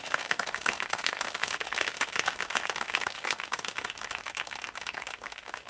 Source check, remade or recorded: remade